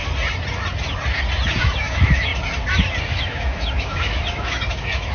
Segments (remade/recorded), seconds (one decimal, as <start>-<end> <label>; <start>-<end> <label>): 0.0-1.6 recorded; 1.6-2.3 remade; 2.3-3.0 recorded; 3.0-5.1 remade